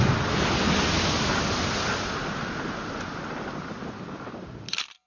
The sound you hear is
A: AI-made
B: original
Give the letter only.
B